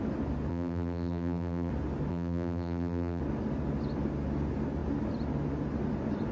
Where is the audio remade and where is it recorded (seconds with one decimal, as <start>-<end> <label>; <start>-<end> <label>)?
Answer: 0.0-0.5 recorded; 0.5-1.7 remade; 1.7-2.1 recorded; 2.1-3.2 remade; 3.2-6.3 recorded